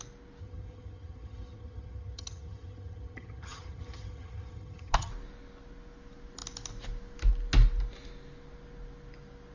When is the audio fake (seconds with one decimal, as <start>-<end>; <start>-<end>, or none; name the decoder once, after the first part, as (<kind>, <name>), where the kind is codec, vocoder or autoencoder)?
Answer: 0.4-5.1 (vocoder, HiFi-GAN)

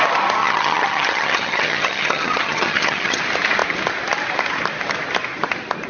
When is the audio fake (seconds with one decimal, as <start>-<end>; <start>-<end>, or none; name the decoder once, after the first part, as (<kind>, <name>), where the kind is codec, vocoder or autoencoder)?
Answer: 0.4-3.2 (vocoder, HiFi-GAN)

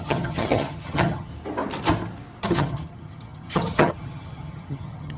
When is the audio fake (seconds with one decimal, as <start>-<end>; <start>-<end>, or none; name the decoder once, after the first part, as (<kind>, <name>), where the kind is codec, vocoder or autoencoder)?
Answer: 0.0-1.3 (vocoder, HiFi-GAN); 2.4-5.2

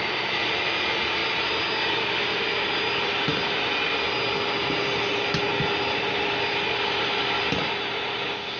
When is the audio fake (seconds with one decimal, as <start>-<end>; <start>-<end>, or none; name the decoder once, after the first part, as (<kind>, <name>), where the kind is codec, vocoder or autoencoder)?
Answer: none